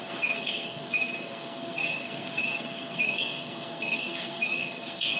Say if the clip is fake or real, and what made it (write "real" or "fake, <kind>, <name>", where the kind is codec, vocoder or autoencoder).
fake, codec, SNAC